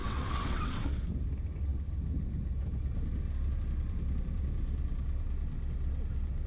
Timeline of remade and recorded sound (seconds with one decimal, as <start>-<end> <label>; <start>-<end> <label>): 0.0-1.0 remade; 1.0-6.5 recorded